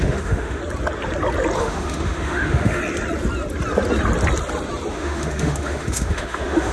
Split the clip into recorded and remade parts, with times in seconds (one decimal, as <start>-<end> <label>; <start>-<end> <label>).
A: 0.0-0.6 remade; 0.6-1.6 recorded; 1.6-2.8 remade; 2.8-4.9 recorded; 4.9-6.7 remade